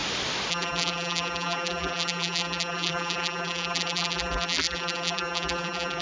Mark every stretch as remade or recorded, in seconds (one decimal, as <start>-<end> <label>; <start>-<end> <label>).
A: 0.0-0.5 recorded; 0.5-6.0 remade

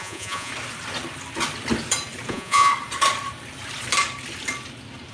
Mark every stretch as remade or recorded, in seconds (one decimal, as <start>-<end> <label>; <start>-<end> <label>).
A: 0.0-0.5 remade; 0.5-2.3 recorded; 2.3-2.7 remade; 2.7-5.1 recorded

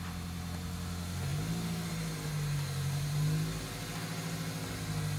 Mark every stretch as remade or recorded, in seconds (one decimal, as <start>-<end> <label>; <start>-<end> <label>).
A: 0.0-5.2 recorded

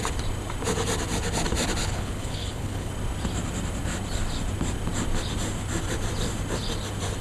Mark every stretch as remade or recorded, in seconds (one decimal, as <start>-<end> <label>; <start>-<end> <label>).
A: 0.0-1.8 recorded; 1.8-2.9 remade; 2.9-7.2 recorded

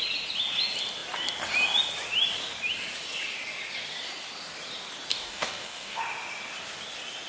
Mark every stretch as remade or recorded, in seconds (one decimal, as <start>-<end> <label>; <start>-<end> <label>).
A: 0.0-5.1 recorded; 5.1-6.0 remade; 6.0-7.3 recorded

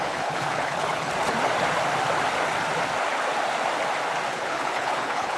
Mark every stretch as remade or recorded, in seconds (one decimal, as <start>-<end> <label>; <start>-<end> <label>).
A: 0.0-1.1 remade; 1.1-4.3 recorded; 4.3-5.4 remade